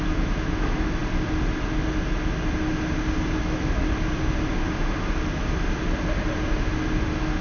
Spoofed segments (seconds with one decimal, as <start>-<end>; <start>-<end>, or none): 0.0-1.0; 3.4-3.8